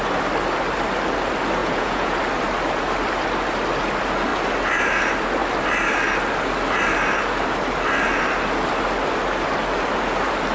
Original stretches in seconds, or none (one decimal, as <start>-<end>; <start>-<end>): 0.0-1.6; 2.2-10.5